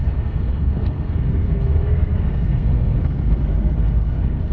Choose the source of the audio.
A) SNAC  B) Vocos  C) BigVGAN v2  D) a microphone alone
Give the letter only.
A